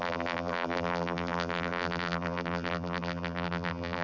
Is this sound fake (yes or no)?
yes